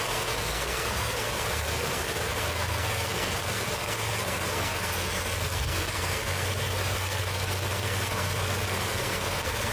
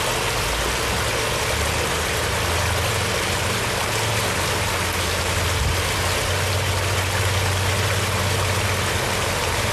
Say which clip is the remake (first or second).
first